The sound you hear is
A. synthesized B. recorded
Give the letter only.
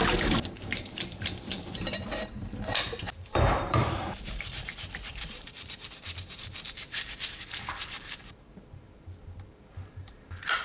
A